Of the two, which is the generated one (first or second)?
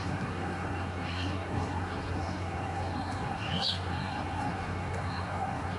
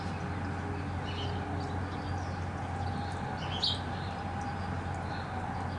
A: first